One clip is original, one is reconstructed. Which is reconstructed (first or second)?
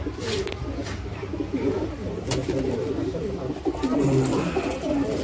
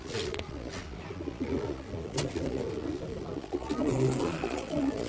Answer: second